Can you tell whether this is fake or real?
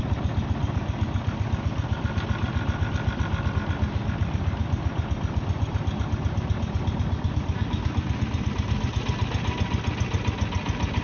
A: real